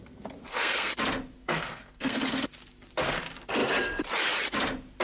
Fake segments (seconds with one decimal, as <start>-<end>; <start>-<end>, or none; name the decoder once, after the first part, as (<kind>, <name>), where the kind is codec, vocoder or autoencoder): 0.4-0.9 (codec, SNAC); 1.4-2.2